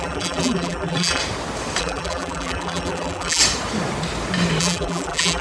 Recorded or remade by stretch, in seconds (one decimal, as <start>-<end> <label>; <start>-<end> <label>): 0.0-1.2 remade; 1.2-1.8 recorded; 1.8-3.4 remade; 3.4-4.6 recorded; 4.6-5.4 remade